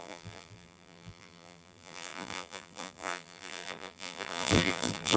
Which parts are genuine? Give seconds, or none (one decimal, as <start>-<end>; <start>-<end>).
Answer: none